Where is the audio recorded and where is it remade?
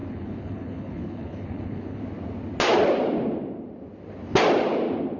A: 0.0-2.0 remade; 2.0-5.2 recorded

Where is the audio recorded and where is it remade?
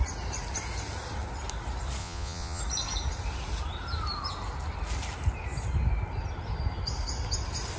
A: 0.0-2.0 recorded; 2.0-2.6 remade; 2.6-7.8 recorded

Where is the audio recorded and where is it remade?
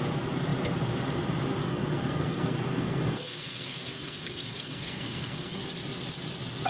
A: 0.0-1.6 recorded; 1.6-5.6 remade; 5.6-6.7 recorded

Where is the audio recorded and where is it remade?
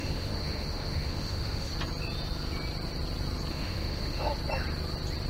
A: 0.0-1.7 remade; 1.7-3.5 recorded; 3.5-4.3 remade; 4.3-5.3 recorded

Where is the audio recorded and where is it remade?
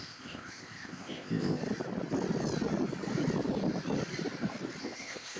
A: 0.0-1.6 remade; 1.6-4.8 recorded; 4.8-5.4 remade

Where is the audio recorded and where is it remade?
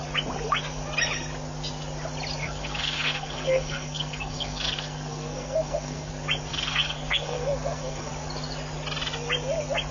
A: 0.0-2.4 recorded; 2.4-6.1 remade; 6.1-6.5 recorded; 6.5-8.1 remade; 8.1-9.9 recorded